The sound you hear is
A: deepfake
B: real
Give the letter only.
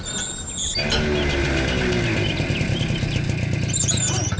B